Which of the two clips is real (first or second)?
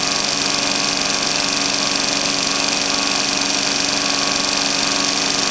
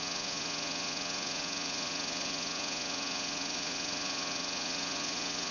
first